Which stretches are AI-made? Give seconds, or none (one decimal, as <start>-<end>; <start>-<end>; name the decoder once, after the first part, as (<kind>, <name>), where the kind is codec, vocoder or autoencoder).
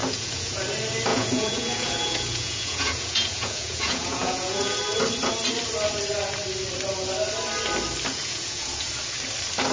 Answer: 0.0-0.6 (vocoder, Vocos); 1.1-4.8; 8.1-8.9